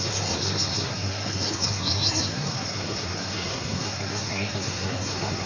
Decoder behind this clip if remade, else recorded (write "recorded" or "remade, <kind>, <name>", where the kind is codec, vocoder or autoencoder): remade, codec, SNAC